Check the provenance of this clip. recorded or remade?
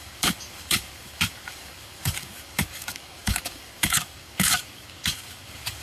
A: remade